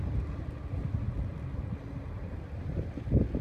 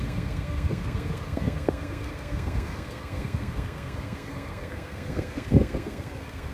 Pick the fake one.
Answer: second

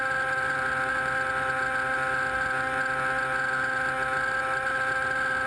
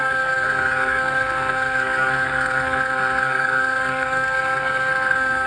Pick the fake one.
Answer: second